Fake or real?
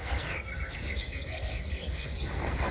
fake